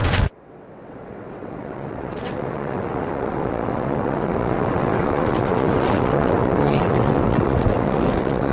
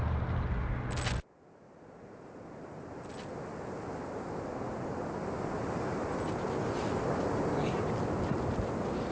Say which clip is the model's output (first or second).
first